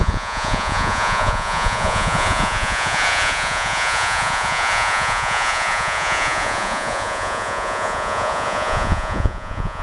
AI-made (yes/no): yes